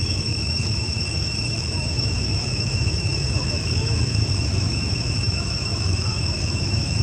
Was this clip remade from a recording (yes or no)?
yes